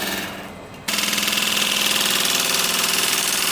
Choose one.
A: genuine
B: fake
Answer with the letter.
A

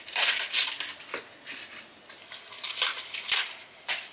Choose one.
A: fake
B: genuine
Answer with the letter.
B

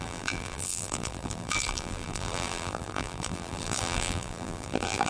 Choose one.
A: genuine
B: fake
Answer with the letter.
B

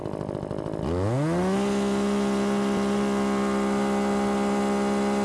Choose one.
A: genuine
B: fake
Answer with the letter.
A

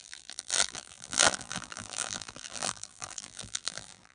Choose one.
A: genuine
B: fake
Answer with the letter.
B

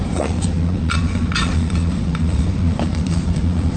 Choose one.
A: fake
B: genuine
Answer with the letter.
A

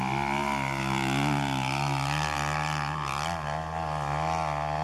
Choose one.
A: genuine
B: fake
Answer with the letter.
A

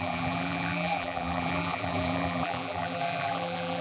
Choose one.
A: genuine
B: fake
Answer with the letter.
B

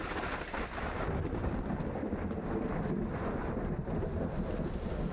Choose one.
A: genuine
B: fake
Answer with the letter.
A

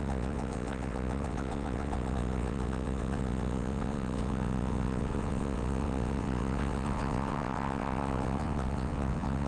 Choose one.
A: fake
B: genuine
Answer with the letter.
A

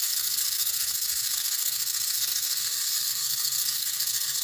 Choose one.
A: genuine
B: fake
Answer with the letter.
B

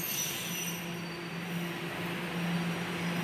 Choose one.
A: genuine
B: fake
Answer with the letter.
A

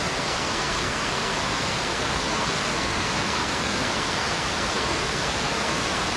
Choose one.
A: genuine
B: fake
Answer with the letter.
B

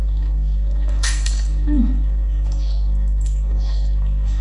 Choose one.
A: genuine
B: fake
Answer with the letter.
B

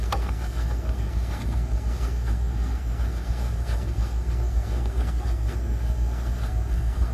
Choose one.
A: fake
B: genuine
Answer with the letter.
A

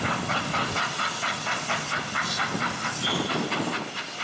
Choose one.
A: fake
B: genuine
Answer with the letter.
B